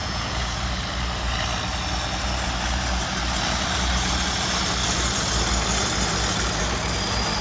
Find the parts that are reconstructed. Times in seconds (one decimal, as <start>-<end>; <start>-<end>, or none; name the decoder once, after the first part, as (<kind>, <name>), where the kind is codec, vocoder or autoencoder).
0.0-0.6 (vocoder, Vocos)